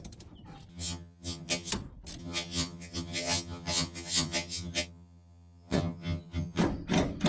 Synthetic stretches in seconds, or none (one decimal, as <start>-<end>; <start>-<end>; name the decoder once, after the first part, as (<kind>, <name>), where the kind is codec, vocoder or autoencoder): 0.7-1.7 (vocoder, HiFi-GAN); 2.2-6.6